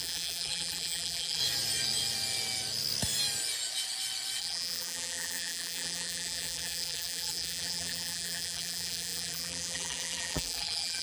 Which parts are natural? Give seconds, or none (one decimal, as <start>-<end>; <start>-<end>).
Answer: 1.4-4.4